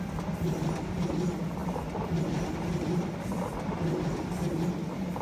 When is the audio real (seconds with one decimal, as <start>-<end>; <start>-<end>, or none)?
0.0-5.2